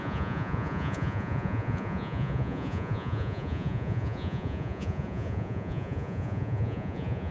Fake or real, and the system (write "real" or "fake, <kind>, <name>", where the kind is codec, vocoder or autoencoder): fake, vocoder, Vocos